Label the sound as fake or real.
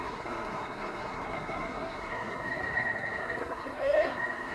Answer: fake